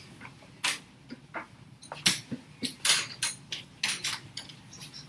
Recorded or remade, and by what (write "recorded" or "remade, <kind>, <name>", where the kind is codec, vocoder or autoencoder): recorded